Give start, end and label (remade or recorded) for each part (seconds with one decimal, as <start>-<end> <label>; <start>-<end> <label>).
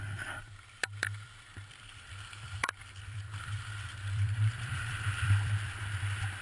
0.0-6.4 remade